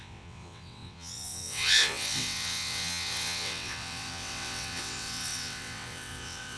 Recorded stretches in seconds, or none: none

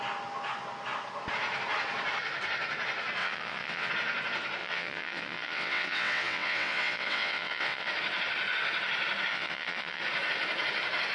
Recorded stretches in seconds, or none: 0.0-3.2; 3.9-4.6; 7.9-9.3; 10.0-11.1

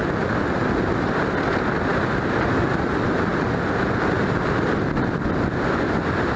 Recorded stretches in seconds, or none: 0.0-6.4

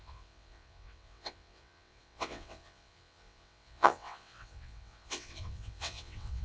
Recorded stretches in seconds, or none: none

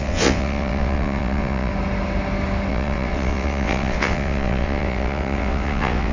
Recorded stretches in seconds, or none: 1.7-2.7

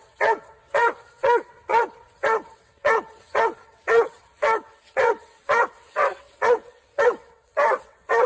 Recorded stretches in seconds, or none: none